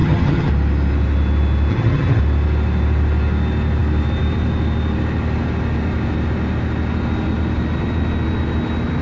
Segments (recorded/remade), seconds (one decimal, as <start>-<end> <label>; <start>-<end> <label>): 0.0-0.5 remade; 0.5-1.7 recorded; 1.7-2.2 remade; 2.2-9.0 recorded